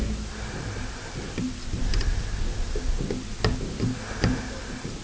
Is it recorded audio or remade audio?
recorded